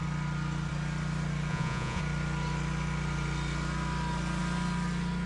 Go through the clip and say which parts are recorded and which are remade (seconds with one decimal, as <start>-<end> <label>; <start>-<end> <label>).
0.0-1.5 recorded; 1.5-2.0 remade; 2.0-5.3 recorded